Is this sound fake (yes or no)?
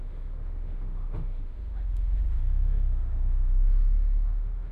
yes